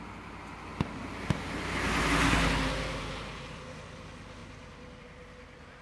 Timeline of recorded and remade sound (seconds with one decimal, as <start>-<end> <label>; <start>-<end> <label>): 0.0-5.8 recorded